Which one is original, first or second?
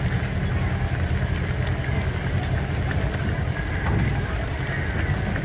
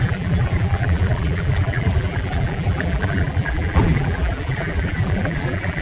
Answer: first